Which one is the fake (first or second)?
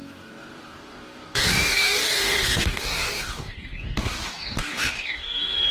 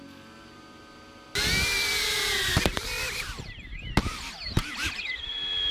first